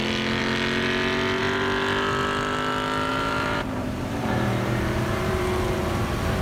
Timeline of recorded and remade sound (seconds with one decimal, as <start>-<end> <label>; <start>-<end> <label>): 0.0-3.1 recorded; 3.1-5.4 remade; 5.4-6.4 recorded